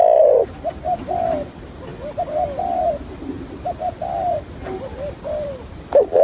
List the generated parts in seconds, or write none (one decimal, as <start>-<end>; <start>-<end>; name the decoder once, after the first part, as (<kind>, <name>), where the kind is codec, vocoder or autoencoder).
0.0-1.9 (vocoder, BigVGAN v2); 4.4-6.2